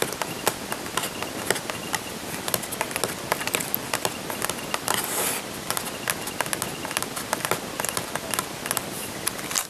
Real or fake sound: real